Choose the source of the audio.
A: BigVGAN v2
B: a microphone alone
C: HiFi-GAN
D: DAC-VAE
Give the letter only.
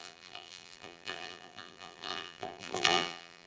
A